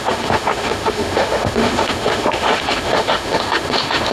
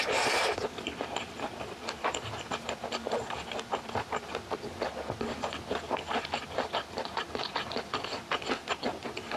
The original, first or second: second